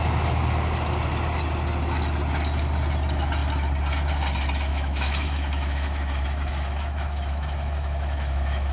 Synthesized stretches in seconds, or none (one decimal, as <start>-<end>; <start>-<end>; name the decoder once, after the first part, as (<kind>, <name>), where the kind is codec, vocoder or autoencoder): 4.7-8.7 (autoencoder, DAC-VAE)